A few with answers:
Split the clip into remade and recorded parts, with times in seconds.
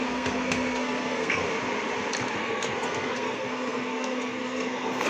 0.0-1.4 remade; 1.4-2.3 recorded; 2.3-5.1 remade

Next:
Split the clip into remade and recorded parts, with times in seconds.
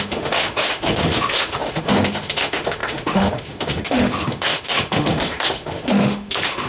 0.0-6.7 remade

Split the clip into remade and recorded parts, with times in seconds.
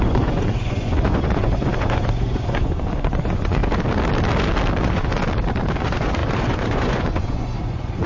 0.0-3.6 remade; 3.6-4.8 recorded; 4.8-5.2 remade; 5.2-5.8 recorded; 5.8-8.1 remade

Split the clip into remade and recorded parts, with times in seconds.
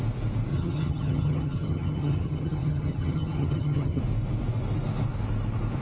0.0-0.5 recorded; 0.5-4.0 remade; 4.0-5.8 recorded